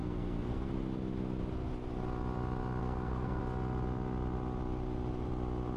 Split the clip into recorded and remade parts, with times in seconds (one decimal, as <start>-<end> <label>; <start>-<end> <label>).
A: 0.0-0.7 remade; 0.7-2.8 recorded; 2.8-3.4 remade; 3.4-5.8 recorded